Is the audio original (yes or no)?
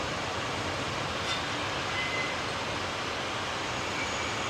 yes